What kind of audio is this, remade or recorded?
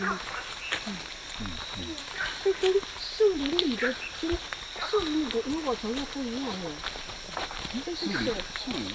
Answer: recorded